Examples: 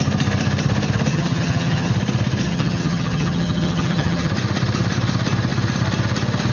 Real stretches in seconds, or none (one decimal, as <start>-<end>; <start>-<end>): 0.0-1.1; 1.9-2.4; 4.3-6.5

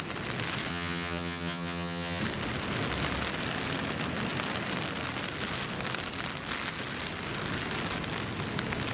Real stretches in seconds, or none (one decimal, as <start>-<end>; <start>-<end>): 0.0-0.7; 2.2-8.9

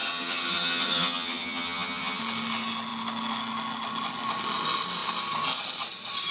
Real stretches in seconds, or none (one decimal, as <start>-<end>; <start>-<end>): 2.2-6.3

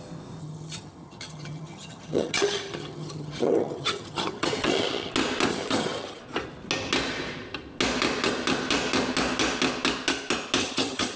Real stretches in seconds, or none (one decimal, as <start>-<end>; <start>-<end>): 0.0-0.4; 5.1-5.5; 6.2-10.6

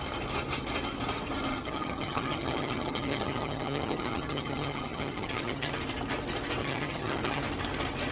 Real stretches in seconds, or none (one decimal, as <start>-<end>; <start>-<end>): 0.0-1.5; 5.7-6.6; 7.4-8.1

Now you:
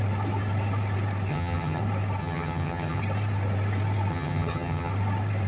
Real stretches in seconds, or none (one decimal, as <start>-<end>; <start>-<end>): 0.0-1.3; 1.8-2.2; 3.0-4.1; 4.9-5.5

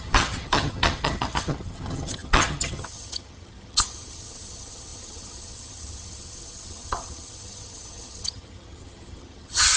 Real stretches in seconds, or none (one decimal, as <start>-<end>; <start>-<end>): none